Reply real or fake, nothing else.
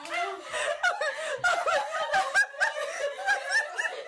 real